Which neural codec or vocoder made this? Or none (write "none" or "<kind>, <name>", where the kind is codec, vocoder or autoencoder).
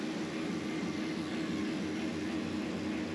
none